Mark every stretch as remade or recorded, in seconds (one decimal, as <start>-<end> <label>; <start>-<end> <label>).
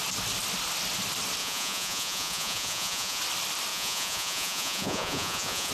0.0-1.4 recorded; 1.4-3.2 remade; 3.2-3.7 recorded; 3.7-5.7 remade